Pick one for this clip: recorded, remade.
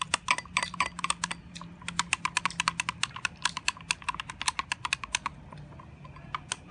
recorded